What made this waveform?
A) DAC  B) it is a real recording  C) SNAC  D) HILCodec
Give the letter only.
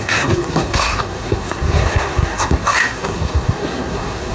C